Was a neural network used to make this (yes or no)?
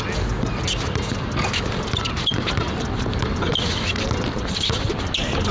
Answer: no